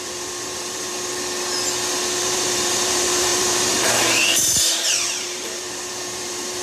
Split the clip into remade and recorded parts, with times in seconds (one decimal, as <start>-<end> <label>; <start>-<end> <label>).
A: 0.0-0.9 remade; 0.9-2.2 recorded; 2.2-6.6 remade